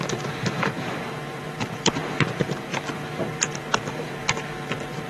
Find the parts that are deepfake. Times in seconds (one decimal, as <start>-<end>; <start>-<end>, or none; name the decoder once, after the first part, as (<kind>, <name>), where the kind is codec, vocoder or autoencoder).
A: 0.0-5.1 (vocoder, BigVGAN v2)